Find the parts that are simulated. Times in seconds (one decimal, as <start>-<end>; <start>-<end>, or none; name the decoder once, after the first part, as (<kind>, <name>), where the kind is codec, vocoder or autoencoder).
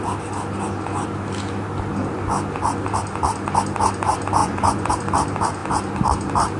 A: 4.4-4.9 (vocoder, Vocos)